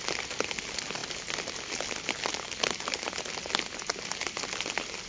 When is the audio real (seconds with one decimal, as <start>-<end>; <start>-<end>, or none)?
0.0-5.1